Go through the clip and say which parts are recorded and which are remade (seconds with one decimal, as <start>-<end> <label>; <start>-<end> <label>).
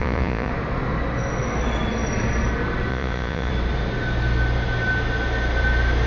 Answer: 0.0-0.5 remade; 0.5-2.9 recorded; 2.9-3.5 remade; 3.5-6.1 recorded